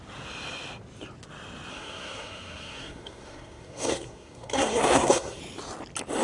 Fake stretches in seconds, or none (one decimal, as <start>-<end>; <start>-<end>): 1.7-5.4